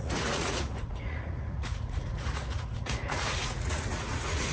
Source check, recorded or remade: remade